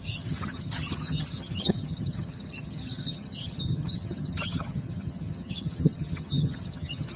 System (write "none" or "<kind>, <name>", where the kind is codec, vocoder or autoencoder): vocoder, HiFi-GAN